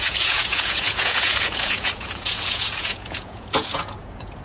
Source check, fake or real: fake